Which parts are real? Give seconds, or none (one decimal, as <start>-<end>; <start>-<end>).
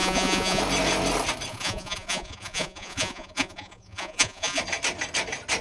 0.6-1.5; 4.6-5.6